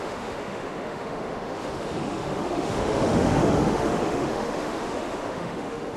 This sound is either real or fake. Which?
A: fake